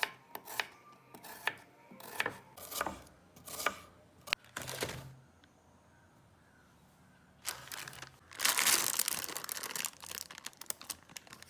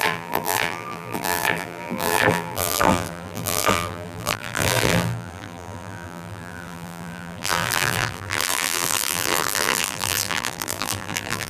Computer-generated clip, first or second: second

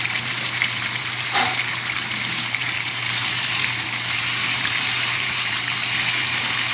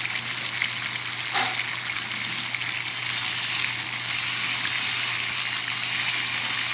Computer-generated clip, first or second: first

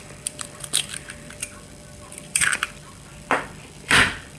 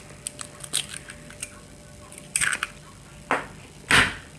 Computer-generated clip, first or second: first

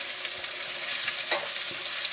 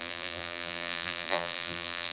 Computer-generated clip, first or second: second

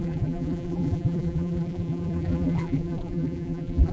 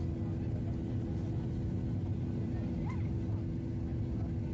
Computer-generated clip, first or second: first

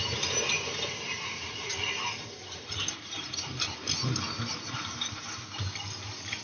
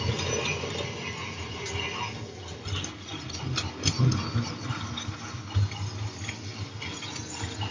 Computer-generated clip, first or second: first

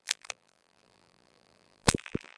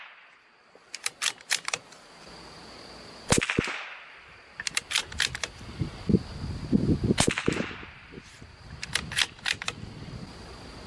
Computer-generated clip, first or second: first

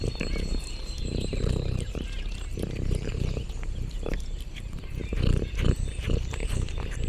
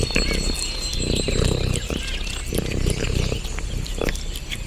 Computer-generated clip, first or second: first